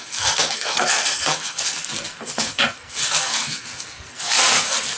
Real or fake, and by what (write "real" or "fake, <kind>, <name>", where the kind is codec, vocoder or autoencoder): fake, codec, SNAC